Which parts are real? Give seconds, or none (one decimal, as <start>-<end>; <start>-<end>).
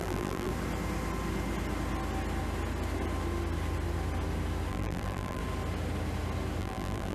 0.5-4.7; 5.4-6.6